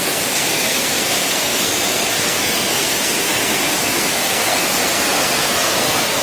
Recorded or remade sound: remade